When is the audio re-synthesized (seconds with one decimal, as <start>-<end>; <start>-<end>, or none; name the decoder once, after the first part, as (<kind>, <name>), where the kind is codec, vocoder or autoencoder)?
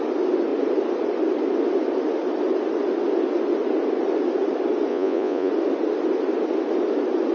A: 4.9-5.5 (vocoder, Vocos)